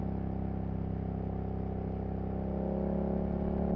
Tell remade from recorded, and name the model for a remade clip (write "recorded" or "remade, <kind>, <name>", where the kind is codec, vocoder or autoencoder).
recorded